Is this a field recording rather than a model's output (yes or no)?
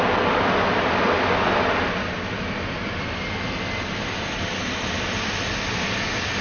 yes